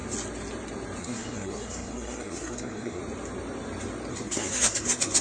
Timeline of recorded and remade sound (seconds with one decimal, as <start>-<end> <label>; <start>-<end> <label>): 0.0-1.0 recorded; 1.0-3.0 remade; 3.0-4.1 recorded; 4.1-5.2 remade